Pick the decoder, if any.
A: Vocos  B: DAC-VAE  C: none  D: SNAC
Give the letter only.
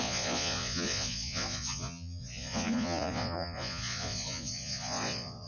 A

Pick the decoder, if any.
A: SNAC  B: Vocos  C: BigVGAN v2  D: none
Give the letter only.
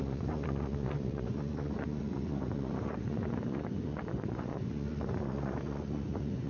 B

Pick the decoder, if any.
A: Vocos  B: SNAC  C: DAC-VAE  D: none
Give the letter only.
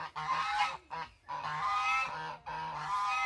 D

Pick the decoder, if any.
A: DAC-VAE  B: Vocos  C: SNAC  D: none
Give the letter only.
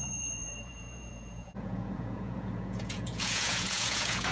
B